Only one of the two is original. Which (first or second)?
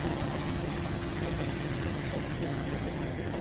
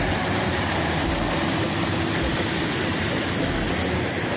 second